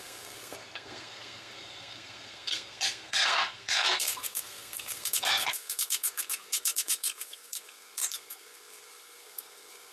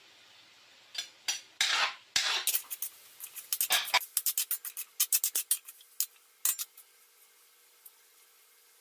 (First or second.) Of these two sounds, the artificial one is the first